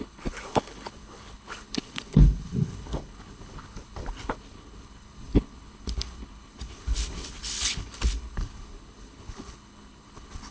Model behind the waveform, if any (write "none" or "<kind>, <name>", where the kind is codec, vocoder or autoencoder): codec, HILCodec